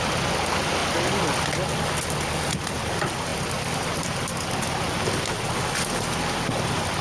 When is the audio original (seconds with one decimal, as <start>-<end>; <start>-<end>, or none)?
0.0-7.0